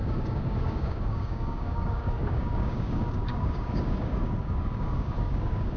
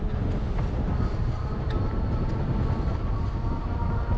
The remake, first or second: first